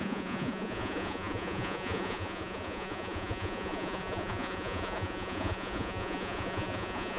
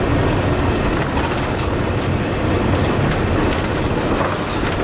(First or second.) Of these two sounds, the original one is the second